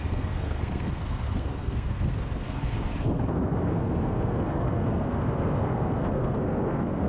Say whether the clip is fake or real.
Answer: fake